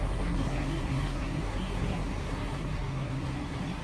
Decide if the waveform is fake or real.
fake